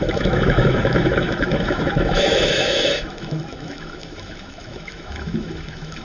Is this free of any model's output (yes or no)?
no